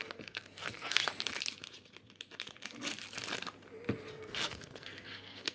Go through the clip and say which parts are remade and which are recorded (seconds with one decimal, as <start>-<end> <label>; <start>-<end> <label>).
0.0-1.0 remade; 1.0-4.1 recorded; 4.1-5.5 remade